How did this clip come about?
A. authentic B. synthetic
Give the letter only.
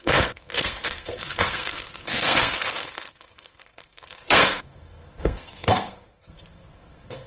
B